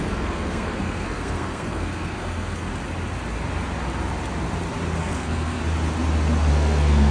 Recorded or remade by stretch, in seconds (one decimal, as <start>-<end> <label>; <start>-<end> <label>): 0.0-2.7 remade; 2.7-5.0 recorded; 5.0-5.6 remade; 5.6-6.5 recorded; 6.5-7.1 remade